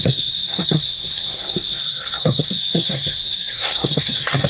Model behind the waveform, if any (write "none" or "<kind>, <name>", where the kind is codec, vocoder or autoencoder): codec, SNAC